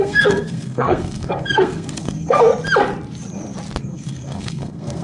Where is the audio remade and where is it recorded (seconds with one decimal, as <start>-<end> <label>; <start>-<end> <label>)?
0.0-2.5 remade; 2.5-3.8 recorded; 3.8-5.0 remade